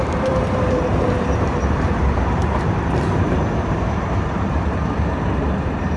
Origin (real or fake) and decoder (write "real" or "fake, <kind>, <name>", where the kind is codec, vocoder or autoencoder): fake, vocoder, BigVGAN v2